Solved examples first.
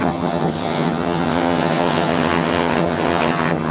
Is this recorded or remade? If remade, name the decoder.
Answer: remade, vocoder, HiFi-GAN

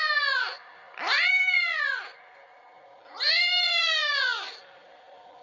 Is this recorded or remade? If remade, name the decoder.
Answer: remade, vocoder, BigVGAN v2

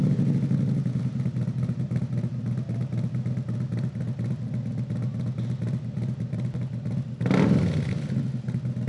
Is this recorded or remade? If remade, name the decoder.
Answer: recorded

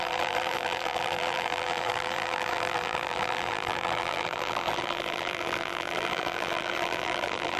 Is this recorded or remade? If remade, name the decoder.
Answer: remade, vocoder, BigVGAN v2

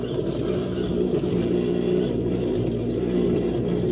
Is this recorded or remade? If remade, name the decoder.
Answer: remade, vocoder, BigVGAN v2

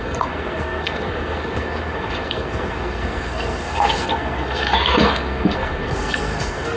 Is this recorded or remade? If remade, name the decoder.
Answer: remade, codec, SNAC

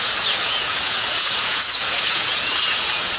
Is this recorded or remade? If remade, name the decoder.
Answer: remade, vocoder, Vocos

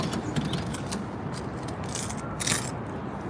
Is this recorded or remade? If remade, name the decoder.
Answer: recorded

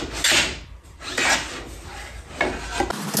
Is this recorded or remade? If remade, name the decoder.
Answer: recorded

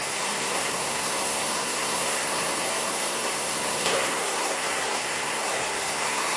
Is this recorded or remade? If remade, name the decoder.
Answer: remade, codec, SNAC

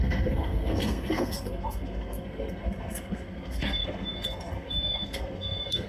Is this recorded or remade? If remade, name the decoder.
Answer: remade, codec, SNAC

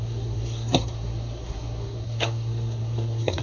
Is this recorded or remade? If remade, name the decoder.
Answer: remade, codec, SNAC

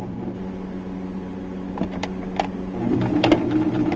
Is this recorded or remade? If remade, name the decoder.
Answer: remade, vocoder, BigVGAN v2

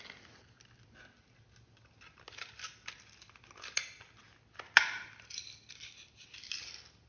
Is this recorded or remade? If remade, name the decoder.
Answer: recorded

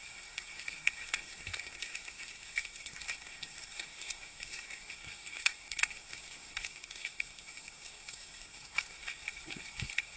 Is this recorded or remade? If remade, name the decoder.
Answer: remade, codec, SNAC